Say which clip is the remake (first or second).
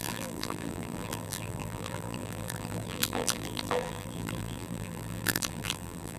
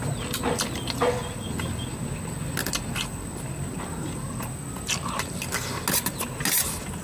first